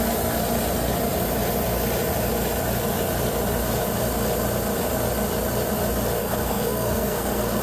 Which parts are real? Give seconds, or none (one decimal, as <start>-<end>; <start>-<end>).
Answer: 0.0-6.2